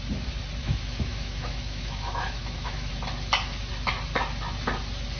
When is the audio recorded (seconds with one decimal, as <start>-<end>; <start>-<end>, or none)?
0.0-0.6; 2.9-5.2